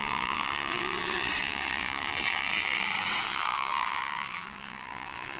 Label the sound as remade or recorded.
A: remade